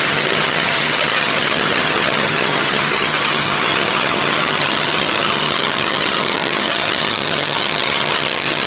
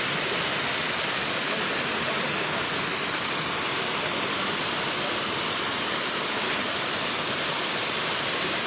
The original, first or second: second